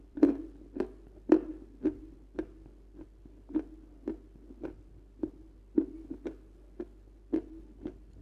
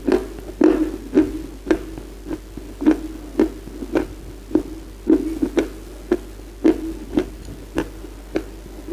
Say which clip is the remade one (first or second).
first